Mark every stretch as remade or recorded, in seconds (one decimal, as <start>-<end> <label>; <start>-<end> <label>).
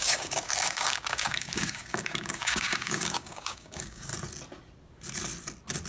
0.0-4.1 remade; 4.1-5.9 recorded